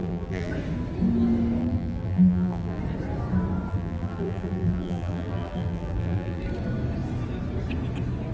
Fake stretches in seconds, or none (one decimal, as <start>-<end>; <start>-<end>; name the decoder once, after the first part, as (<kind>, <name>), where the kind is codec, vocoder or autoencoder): 0.0-0.5 (vocoder, BigVGAN v2); 1.6-2.8; 3.7-6.4